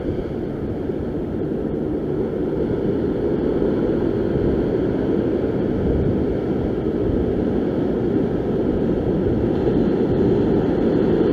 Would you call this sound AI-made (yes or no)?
no